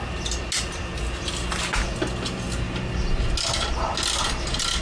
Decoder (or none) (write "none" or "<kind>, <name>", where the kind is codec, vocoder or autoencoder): none